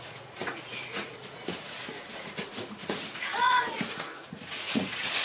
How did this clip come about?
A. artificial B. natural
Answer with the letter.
A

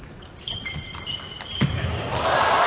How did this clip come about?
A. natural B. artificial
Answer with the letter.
A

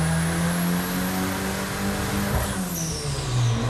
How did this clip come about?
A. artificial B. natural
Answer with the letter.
B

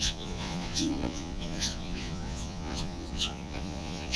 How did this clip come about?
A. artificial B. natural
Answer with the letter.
A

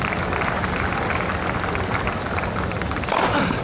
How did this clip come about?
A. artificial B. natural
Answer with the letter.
B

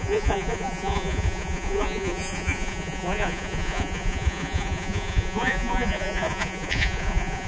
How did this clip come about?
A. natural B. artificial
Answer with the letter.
B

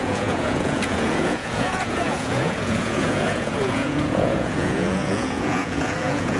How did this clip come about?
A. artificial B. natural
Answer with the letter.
A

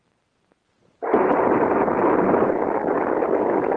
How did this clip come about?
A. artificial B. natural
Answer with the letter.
B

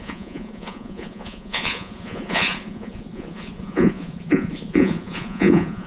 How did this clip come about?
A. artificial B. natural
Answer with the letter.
A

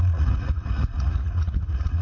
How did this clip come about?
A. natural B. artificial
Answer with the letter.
B